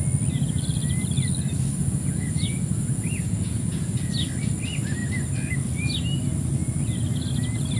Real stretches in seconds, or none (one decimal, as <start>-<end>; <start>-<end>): 0.0-1.8; 4.1-7.8